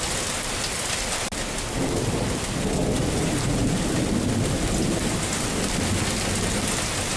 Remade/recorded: recorded